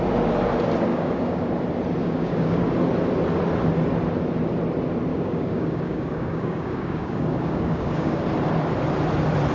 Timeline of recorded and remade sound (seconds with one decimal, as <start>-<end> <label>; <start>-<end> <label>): 0.0-0.9 recorded; 0.9-1.5 remade; 1.5-2.0 recorded; 2.0-2.6 remade; 2.6-5.1 recorded; 5.1-8.2 remade; 8.2-9.5 recorded